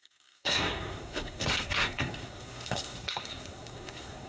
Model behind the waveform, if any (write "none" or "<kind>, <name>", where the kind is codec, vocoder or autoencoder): codec, SNAC